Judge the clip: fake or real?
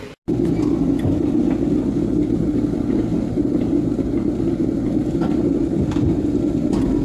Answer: real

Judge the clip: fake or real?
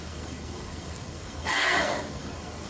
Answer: fake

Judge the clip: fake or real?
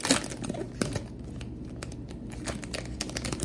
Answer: real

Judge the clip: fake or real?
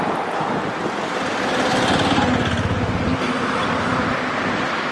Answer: real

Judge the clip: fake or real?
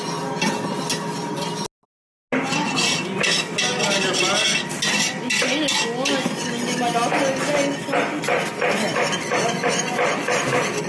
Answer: real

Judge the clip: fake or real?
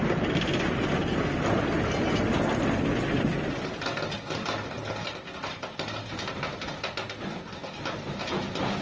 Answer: real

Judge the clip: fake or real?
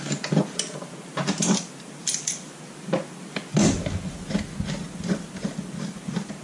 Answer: real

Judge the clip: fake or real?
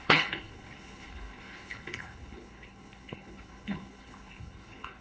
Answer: fake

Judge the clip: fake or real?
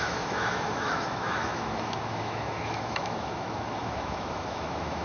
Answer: fake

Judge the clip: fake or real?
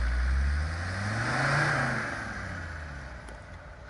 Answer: real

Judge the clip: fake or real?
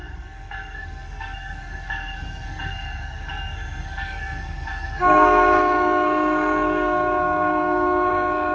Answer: fake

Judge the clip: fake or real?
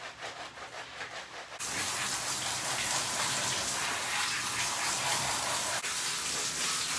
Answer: real